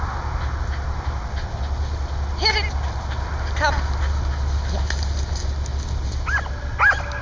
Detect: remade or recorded recorded